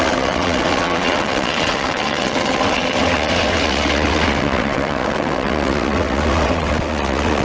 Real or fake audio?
fake